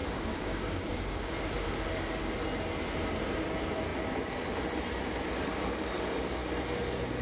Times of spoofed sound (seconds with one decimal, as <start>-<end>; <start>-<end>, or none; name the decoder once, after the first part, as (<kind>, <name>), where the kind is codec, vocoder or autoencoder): 0.0-1.5 (codec, DAC)